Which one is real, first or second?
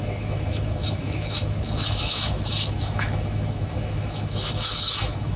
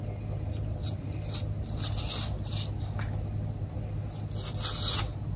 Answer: second